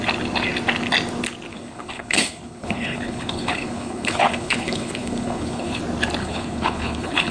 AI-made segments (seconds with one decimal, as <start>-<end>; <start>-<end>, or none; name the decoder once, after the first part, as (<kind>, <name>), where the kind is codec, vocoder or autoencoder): 1.5-5.8 (codec, HILCodec); 6.2-7.3